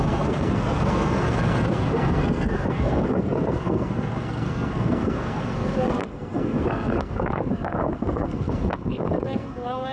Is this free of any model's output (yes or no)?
no